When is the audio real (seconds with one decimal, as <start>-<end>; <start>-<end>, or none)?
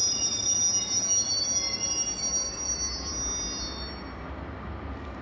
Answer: 0.0-5.2